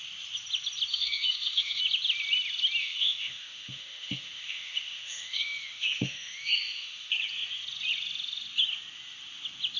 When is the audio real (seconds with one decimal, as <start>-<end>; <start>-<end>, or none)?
0.0-0.9; 1.8-2.8; 7.1-9.8